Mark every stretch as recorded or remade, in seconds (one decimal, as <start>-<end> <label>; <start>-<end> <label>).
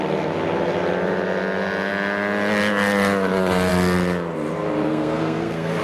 0.0-4.9 recorded; 4.9-5.8 remade